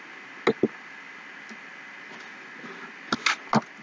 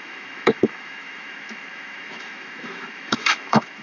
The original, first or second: first